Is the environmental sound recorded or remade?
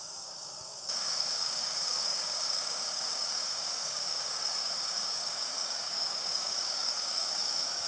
remade